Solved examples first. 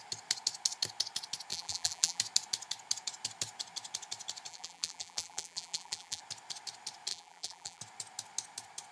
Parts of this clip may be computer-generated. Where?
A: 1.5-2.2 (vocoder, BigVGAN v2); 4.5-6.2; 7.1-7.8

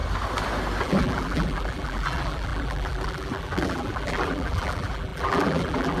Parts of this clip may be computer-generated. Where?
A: 0.8-6.0 (vocoder, BigVGAN v2)

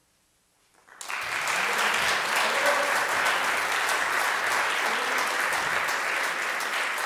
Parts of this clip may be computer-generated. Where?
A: none

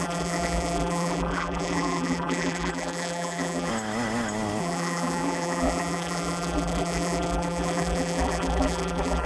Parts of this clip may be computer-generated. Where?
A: 0.0-3.7 (vocoder, BigVGAN v2); 4.6-9.3

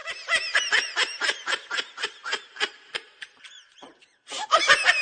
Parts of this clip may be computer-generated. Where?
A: 0.6-5.0 (vocoder, BigVGAN v2)